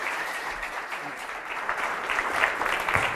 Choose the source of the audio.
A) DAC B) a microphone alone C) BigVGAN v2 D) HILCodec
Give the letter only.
C